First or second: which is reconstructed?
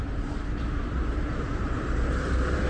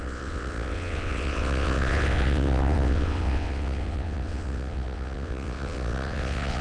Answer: second